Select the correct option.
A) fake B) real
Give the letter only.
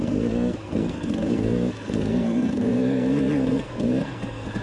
A